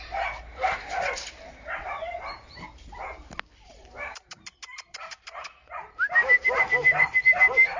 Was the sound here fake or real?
fake